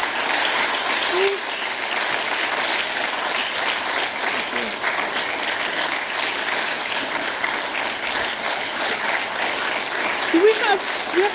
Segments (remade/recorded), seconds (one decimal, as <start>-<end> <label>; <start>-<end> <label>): 0.0-8.4 recorded; 8.4-9.0 remade; 9.0-11.3 recorded